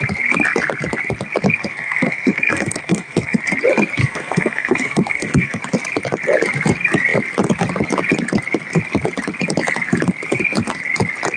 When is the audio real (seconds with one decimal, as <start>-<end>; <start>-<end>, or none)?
0.0-1.6; 3.4-4.0; 5.6-11.4